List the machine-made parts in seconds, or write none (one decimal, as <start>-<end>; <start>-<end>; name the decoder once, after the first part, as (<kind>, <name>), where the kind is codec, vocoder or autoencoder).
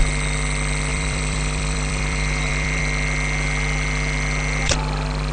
0.9-2.8 (vocoder, BigVGAN v2)